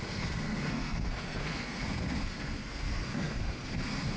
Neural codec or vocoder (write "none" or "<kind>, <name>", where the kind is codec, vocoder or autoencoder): codec, SNAC